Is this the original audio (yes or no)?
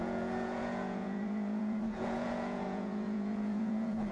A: no